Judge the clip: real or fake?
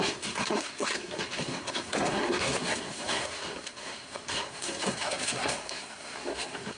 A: fake